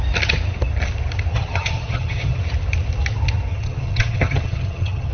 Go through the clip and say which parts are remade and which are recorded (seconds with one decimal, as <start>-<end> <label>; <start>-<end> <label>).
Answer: 0.0-1.3 recorded; 1.3-2.4 remade; 2.4-3.5 recorded; 3.5-5.1 remade

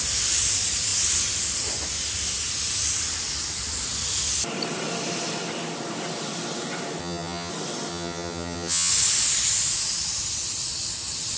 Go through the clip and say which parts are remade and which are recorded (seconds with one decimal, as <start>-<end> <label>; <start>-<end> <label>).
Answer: 0.0-7.0 recorded; 7.0-7.5 remade; 7.5-7.9 recorded; 7.9-8.9 remade; 8.9-11.4 recorded

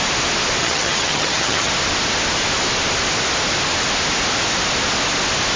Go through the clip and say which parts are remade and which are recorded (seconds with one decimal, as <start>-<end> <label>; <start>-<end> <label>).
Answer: 0.0-0.6 recorded; 0.6-1.7 remade; 1.7-5.6 recorded

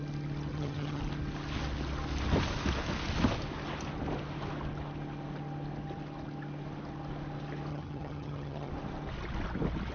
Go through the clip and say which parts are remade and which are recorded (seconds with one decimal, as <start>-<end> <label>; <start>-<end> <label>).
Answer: 0.0-0.5 recorded; 0.5-1.0 remade; 1.0-7.7 recorded; 7.7-8.7 remade; 8.7-9.9 recorded